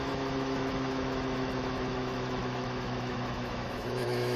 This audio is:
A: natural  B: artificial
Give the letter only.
B